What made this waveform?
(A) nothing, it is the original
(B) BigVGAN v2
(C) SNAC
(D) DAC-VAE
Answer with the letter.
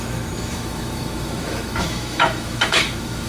D